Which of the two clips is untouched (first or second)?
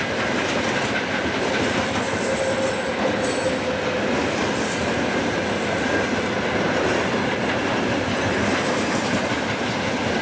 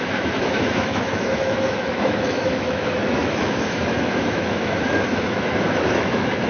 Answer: first